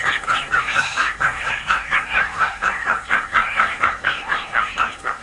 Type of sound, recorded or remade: remade